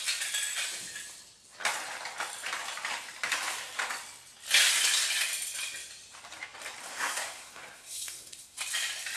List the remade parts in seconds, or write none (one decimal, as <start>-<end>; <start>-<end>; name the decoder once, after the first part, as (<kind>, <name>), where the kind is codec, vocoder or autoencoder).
6.8-8.6 (codec, SNAC)